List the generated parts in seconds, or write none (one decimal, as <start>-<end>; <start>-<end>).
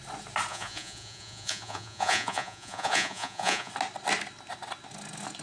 0.5-3.7